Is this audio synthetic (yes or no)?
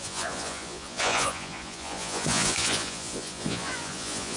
yes